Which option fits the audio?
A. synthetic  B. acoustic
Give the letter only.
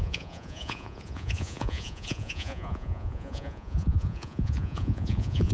A